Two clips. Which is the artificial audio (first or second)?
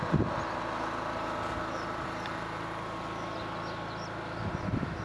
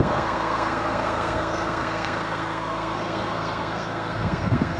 second